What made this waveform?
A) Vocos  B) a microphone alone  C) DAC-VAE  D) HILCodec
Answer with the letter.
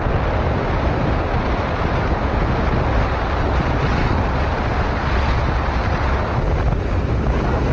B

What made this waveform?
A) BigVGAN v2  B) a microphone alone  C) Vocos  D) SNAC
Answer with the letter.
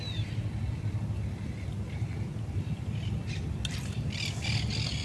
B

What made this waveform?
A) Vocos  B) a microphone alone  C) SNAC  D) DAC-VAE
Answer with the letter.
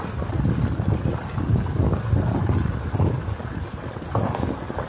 B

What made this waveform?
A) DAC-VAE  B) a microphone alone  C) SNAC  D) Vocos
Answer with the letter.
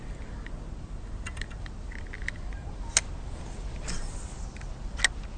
B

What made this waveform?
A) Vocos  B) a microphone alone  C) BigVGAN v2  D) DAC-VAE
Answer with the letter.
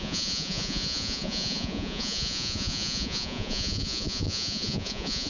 A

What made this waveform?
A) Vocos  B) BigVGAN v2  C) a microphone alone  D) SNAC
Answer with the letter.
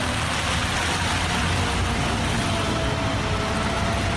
C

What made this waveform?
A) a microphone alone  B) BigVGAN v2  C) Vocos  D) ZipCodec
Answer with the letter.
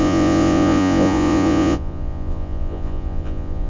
C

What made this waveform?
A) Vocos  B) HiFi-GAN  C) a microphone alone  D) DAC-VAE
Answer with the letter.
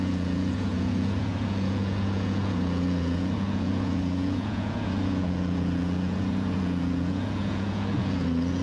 A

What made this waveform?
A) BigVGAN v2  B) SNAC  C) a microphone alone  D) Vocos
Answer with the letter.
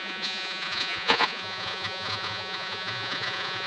D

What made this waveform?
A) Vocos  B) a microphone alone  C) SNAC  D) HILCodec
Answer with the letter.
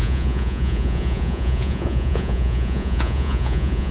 A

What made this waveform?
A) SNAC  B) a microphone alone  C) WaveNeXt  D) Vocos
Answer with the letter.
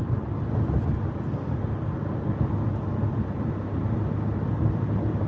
B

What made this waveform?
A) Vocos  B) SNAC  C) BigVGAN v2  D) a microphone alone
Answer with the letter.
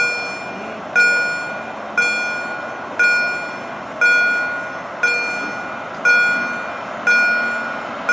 D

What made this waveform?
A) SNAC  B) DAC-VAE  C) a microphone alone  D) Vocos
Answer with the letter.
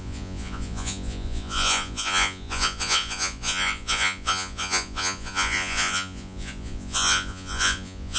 D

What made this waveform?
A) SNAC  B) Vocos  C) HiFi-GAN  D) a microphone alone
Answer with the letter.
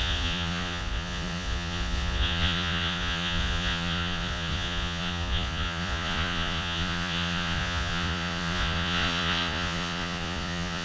B